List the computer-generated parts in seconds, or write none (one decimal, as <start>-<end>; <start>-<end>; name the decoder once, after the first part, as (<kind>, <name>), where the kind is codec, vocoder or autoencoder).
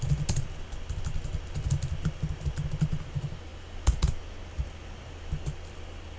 none